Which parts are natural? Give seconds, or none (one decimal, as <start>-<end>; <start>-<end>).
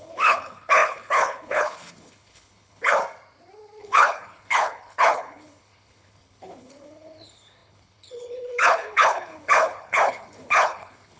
3.0-3.8